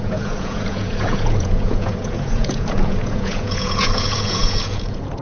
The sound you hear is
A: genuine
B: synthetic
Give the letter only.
B